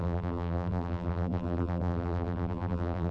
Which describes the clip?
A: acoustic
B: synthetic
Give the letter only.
B